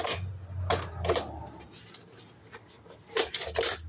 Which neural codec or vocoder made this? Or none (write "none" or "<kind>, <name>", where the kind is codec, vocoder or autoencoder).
none